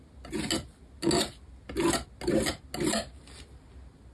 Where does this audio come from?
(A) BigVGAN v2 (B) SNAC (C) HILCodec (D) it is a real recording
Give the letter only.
D